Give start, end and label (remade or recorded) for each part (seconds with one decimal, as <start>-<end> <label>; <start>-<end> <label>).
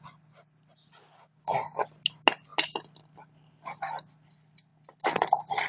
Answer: 0.0-5.7 recorded